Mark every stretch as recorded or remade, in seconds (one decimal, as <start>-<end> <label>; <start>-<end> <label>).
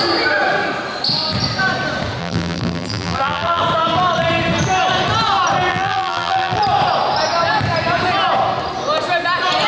0.0-2.2 recorded; 2.2-3.6 remade; 3.6-5.7 recorded; 5.7-6.6 remade; 6.6-9.7 recorded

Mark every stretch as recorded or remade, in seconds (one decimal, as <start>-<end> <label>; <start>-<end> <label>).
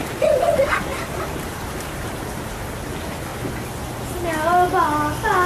0.0-3.3 remade; 3.3-5.5 recorded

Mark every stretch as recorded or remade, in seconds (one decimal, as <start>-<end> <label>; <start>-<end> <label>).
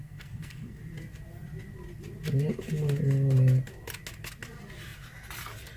0.0-0.8 remade; 0.8-5.8 recorded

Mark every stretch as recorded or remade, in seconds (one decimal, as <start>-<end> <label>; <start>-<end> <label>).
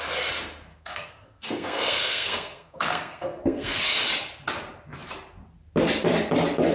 0.0-0.7 recorded; 0.7-3.8 remade; 3.8-6.7 recorded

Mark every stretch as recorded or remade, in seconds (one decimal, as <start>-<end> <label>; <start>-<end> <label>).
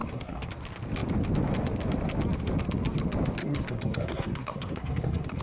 0.0-0.5 remade; 0.5-3.4 recorded; 3.4-5.4 remade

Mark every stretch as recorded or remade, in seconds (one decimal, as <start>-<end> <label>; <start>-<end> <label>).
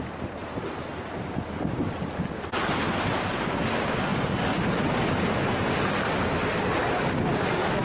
0.0-4.1 recorded; 4.1-5.2 remade; 5.2-6.8 recorded; 6.8-7.3 remade; 7.3-7.8 recorded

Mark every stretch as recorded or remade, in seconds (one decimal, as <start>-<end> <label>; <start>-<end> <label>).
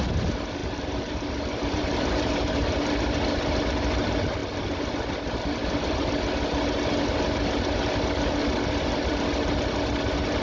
0.0-0.6 recorded; 0.6-2.7 remade; 2.7-10.4 recorded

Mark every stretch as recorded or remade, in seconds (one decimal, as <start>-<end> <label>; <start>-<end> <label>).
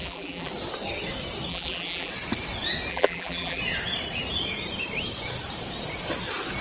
0.0-0.5 remade; 0.5-1.5 recorded; 1.5-2.1 remade; 2.1-2.9 recorded; 2.9-3.6 remade; 3.6-6.6 recorded